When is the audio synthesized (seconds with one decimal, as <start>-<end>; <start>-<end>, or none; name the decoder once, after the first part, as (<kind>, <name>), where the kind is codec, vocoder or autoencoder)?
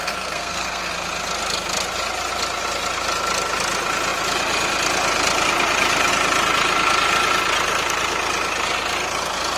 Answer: 0.0-0.9 (codec, SNAC)